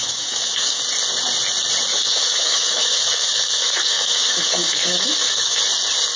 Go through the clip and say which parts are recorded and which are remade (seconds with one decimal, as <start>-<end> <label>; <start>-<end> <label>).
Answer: 0.0-0.8 remade; 0.8-1.9 recorded; 1.9-5.6 remade; 5.6-6.2 recorded